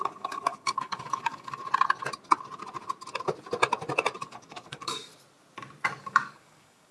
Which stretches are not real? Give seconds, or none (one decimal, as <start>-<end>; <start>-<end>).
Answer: 0.0-1.6; 4.2-5.1; 6.0-6.9